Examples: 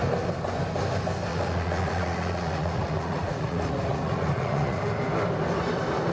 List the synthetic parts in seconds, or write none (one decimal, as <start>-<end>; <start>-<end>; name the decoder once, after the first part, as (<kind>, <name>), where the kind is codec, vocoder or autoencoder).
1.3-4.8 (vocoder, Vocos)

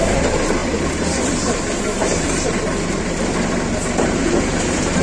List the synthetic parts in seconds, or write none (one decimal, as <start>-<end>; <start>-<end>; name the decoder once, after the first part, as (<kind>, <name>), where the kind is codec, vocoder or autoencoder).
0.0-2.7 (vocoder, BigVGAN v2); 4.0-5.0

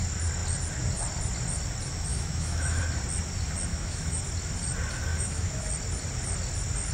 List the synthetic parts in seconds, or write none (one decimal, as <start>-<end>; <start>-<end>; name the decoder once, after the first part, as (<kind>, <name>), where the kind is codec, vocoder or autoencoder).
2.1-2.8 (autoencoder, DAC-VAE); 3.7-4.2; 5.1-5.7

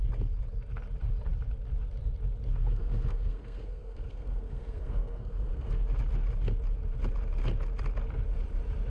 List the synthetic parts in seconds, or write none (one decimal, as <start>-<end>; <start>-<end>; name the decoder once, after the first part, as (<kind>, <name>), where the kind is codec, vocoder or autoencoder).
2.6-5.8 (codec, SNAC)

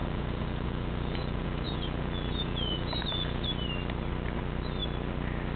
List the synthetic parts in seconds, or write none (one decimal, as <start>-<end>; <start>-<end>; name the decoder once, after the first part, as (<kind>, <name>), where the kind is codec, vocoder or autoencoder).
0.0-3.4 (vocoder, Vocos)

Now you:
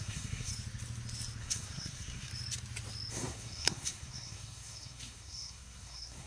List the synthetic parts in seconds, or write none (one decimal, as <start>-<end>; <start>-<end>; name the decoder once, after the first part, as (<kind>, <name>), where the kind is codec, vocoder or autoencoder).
0.0-0.5 (codec, SNAC); 1.4-2.3; 3.1-6.3